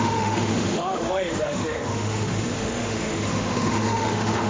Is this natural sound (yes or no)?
no